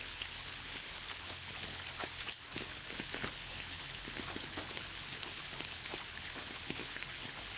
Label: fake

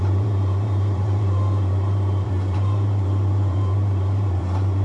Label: fake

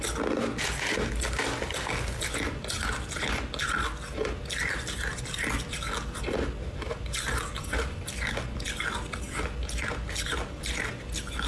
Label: real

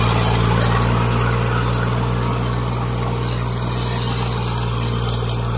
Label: real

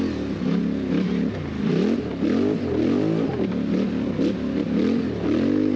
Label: real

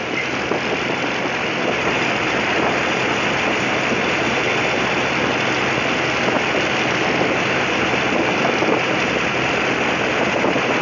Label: real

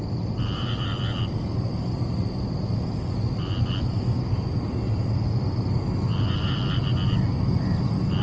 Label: real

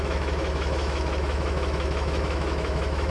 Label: fake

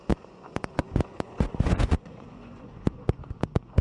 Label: fake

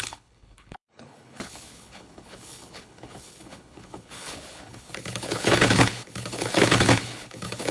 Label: fake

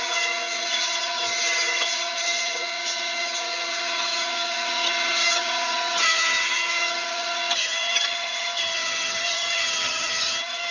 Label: fake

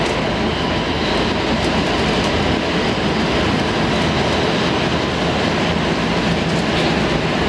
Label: real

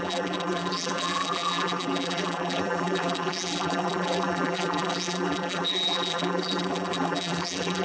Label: fake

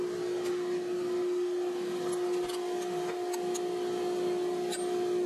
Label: real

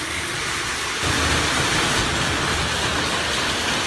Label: real